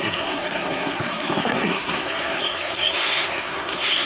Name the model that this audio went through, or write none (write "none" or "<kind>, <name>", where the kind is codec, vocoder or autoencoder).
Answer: codec, SNAC